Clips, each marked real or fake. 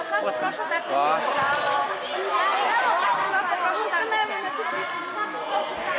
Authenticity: real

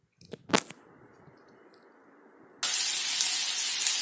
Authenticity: real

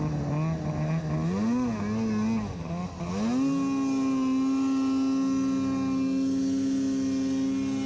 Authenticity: real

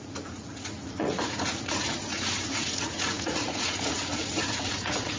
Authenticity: fake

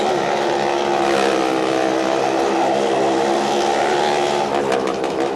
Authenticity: real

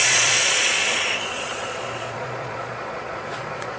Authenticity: fake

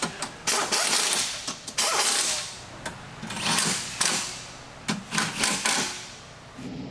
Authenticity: real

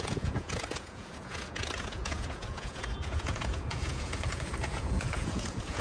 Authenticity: fake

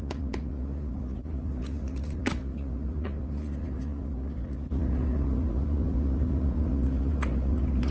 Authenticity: fake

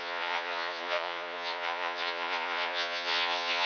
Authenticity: fake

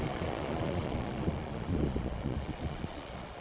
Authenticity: fake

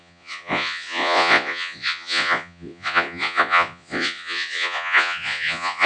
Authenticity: fake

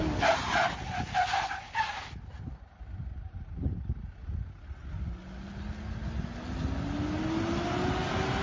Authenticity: real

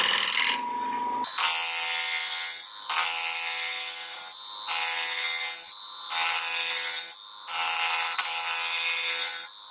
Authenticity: real